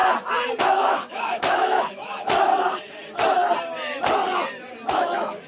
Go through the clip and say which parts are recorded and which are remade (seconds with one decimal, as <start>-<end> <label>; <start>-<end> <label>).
0.0-0.6 recorded; 0.6-2.5 remade; 2.5-4.9 recorded; 4.9-5.5 remade